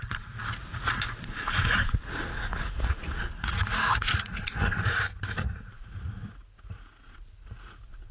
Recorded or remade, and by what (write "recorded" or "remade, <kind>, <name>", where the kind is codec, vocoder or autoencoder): remade, vocoder, Vocos